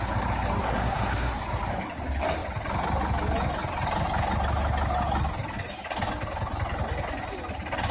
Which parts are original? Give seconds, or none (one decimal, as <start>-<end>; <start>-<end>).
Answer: 0.0-0.6; 1.4-7.9